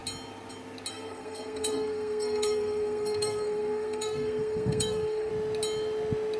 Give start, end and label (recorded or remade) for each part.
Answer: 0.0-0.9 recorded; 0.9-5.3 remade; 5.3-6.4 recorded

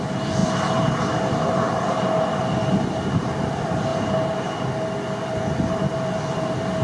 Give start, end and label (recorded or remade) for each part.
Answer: 0.0-6.8 recorded

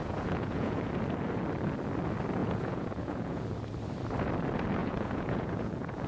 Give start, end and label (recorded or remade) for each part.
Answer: 0.0-0.9 remade; 0.9-2.4 recorded; 2.4-3.4 remade; 3.4-4.8 recorded; 4.8-6.1 remade

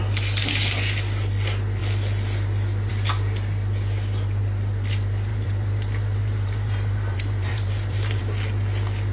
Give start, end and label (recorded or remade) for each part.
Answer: 0.0-5.3 recorded; 5.3-8.2 remade; 8.2-9.1 recorded